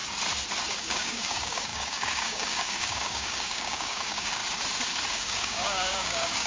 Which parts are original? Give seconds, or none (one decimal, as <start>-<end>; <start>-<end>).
0.0-0.7; 4.4-5.1